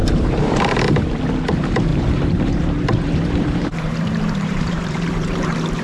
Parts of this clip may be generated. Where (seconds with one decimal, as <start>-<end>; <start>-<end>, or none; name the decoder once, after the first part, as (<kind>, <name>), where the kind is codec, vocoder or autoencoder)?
0.0-0.7 (vocoder, BigVGAN v2); 1.9-5.8